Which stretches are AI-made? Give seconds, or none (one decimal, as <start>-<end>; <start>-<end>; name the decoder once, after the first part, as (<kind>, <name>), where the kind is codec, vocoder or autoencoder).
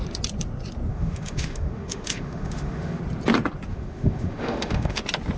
0.9-3.0 (autoencoder, DAC-VAE); 3.7-5.0